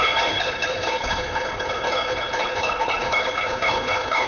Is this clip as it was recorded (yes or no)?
no